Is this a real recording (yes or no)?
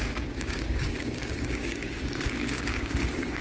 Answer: no